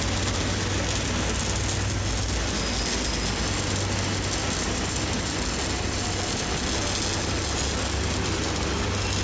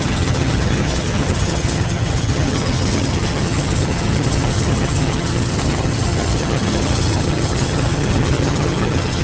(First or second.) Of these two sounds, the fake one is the second